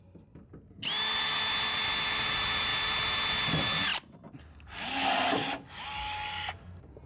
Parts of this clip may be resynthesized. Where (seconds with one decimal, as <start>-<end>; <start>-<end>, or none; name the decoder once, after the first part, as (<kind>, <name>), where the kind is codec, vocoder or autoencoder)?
3.9-4.9 (vocoder, BigVGAN v2)